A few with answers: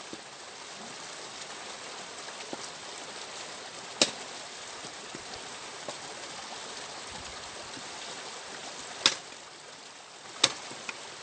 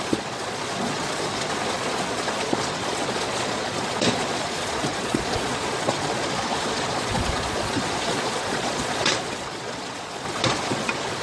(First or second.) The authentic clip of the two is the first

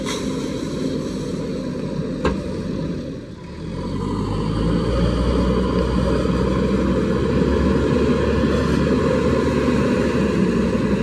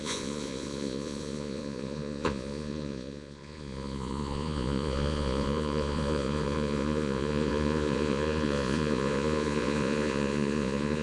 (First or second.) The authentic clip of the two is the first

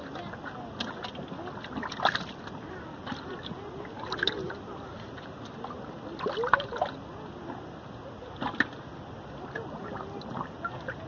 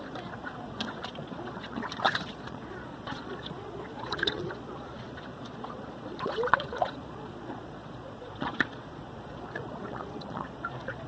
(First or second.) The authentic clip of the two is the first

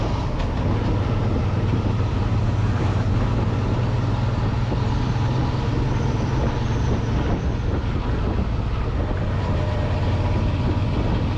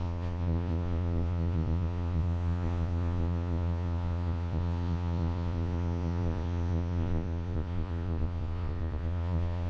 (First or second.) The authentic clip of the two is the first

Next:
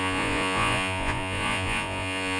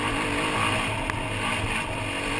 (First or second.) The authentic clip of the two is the second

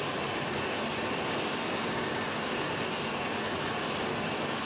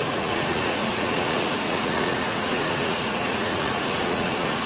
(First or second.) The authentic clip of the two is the first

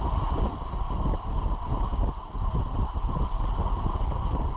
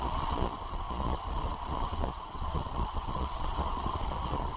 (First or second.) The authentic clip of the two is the first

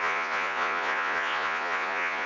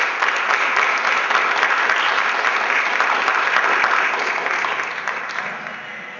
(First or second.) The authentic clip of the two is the second